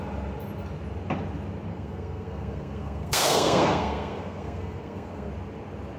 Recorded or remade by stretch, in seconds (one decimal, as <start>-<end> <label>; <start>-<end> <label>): 0.0-1.7 recorded; 1.7-5.3 remade; 5.3-6.0 recorded